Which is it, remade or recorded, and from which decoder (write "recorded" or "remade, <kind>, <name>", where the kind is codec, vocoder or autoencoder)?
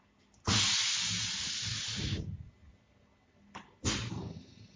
recorded